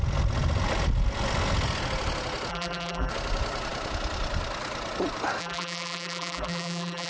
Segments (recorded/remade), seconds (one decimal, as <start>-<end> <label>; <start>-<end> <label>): 0.0-2.5 recorded; 2.5-3.1 remade; 3.1-5.4 recorded; 5.4-7.1 remade